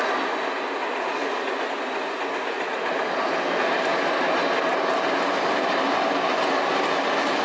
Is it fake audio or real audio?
real